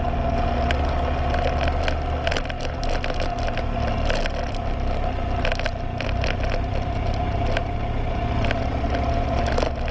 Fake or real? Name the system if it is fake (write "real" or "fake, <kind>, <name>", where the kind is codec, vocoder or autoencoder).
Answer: real